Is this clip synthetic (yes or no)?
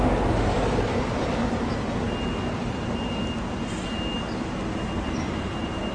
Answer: no